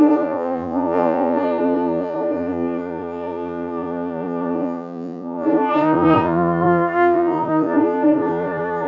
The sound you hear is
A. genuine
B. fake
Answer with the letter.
B